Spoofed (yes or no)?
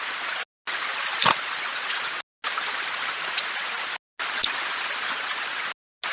no